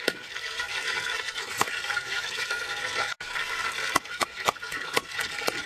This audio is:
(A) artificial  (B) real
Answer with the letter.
A